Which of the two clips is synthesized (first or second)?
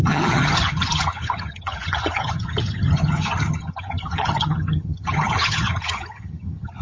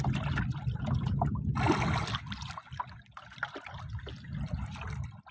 first